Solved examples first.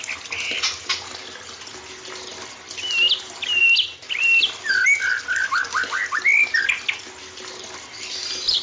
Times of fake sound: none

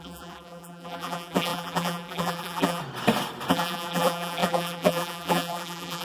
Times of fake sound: 0.0-2.8; 3.5-6.0

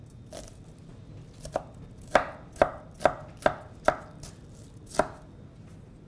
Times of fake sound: none